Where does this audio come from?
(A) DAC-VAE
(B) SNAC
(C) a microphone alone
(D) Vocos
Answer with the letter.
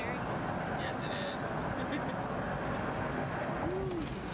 C